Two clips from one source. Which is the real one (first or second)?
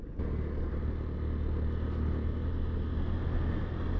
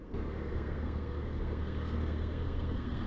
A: first